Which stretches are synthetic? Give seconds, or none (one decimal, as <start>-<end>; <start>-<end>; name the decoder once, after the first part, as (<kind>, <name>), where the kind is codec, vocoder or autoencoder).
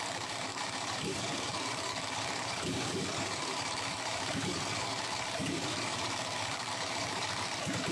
0.0-7.9 (codec, DAC)